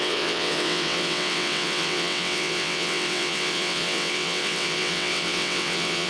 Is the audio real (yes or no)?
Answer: no